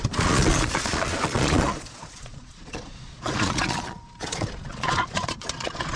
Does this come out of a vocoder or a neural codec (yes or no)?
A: yes